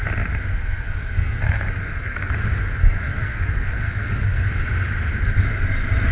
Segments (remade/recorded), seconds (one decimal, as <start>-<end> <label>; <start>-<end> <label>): 0.0-0.5 recorded; 0.5-2.3 remade; 2.3-2.8 recorded; 2.8-4.5 remade; 4.5-6.1 recorded